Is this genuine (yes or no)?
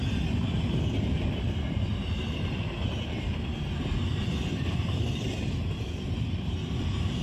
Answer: yes